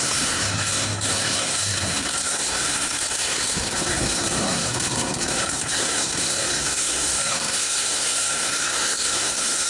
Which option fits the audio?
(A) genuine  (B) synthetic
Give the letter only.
B